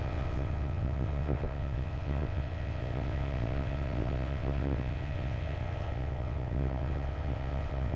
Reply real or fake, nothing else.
fake